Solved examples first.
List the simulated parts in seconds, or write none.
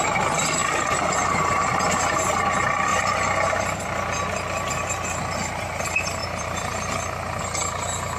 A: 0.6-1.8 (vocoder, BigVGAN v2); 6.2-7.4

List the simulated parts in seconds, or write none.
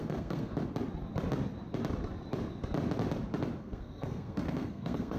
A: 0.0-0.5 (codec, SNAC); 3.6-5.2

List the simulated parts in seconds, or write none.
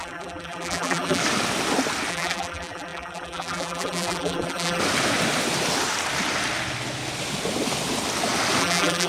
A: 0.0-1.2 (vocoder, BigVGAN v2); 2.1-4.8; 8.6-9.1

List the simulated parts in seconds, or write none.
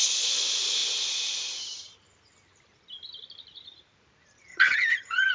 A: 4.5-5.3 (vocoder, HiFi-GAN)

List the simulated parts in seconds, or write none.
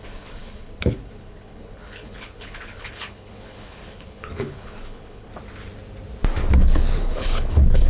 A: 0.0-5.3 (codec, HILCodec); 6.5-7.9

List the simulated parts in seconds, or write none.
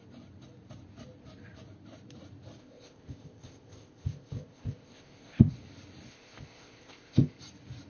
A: 2.6-5.5 (codec, ZipCodec); 6.1-7.4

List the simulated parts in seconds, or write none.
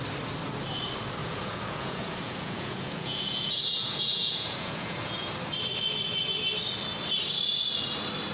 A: 1.2-5.3 (vocoder, Vocos)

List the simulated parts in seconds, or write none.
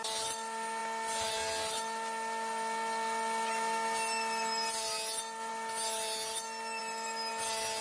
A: none